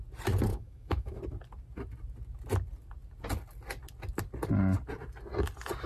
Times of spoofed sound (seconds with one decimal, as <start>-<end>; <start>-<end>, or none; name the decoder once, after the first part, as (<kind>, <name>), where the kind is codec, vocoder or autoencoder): 0.5-1.2 (autoencoder, DAC-VAE)